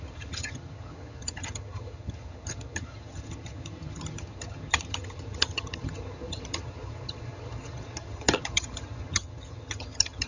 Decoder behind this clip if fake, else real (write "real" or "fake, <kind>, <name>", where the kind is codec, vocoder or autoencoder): fake, vocoder, HiFi-GAN